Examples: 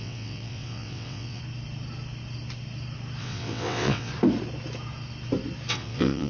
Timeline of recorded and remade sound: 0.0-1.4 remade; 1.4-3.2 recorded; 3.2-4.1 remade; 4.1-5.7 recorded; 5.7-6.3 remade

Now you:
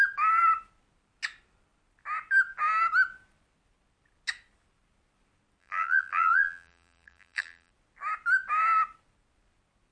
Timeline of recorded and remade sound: 0.0-5.6 recorded; 5.6-7.7 remade; 7.7-9.9 recorded

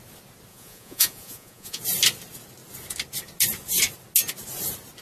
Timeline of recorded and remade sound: 0.0-0.5 recorded; 0.5-1.8 remade; 1.8-5.0 recorded

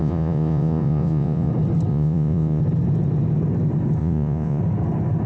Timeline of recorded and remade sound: 0.0-1.5 remade; 1.5-1.9 recorded; 1.9-2.6 remade; 2.6-4.0 recorded; 4.0-4.6 remade; 4.6-5.3 recorded

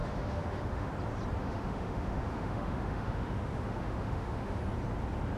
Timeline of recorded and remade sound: 0.0-0.9 remade; 0.9-1.4 recorded; 1.4-4.6 remade; 4.6-5.4 recorded